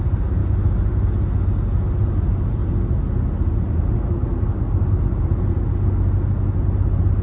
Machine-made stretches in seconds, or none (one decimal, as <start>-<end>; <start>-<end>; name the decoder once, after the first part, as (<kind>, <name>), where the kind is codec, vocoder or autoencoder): none